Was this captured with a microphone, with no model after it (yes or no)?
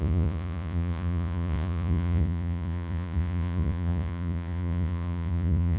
no